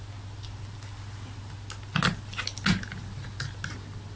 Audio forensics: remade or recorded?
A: recorded